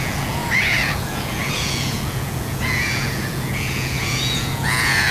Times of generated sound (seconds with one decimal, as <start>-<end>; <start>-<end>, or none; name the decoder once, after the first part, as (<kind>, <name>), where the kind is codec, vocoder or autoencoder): 0.0-5.1 (vocoder, Vocos)